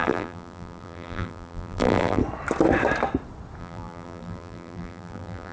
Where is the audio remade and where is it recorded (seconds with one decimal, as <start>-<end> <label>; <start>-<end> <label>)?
0.0-2.2 remade; 2.2-3.6 recorded; 3.6-5.5 remade